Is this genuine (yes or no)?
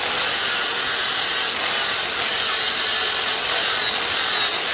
yes